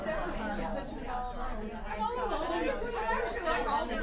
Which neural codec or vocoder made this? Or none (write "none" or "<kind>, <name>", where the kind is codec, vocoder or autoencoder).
none